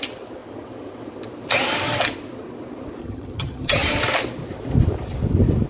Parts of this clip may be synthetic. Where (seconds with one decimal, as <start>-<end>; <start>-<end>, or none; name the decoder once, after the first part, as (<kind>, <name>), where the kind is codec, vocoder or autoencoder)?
3.0-3.9 (vocoder, HiFi-GAN)